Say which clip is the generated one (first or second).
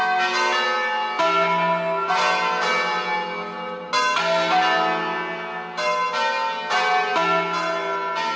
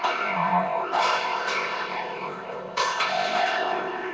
second